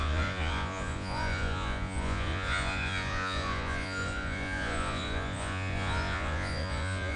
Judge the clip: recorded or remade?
remade